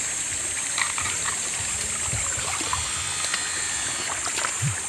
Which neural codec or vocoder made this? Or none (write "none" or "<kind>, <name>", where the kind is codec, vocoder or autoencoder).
none